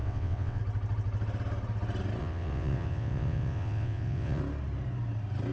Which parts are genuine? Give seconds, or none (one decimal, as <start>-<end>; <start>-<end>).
0.6-2.2; 4.4-5.5